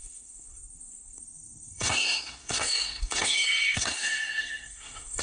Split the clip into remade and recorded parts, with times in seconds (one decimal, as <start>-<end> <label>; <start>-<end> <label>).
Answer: 0.0-5.2 remade